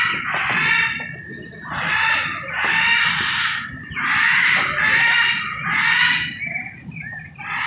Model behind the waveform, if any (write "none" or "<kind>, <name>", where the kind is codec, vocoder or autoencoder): none